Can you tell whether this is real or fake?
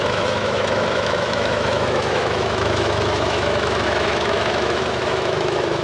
fake